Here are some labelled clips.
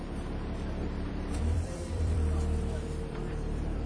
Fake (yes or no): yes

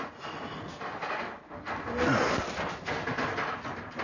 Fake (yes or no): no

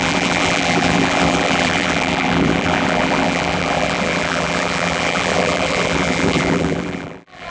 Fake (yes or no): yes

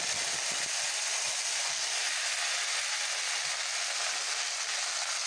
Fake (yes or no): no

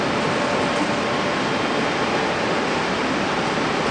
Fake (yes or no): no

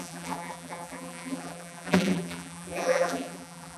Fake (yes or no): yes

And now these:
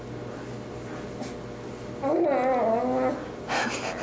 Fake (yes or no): no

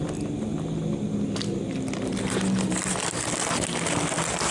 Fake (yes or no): yes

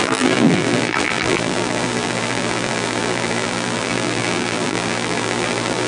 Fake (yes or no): yes